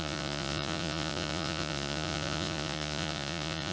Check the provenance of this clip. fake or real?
fake